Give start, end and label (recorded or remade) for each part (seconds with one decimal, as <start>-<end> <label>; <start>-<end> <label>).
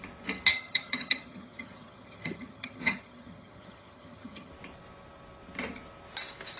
0.0-0.5 recorded; 0.5-4.5 remade; 4.5-6.6 recorded